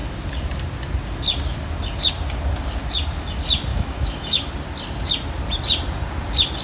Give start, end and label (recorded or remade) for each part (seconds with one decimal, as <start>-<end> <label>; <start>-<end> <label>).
0.0-3.7 recorded; 3.7-4.5 remade; 4.5-6.6 recorded